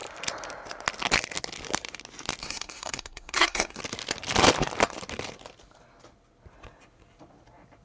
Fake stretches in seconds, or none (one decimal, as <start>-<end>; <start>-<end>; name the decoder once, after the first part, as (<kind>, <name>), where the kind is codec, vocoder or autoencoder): 2.4-3.8 (codec, SNAC)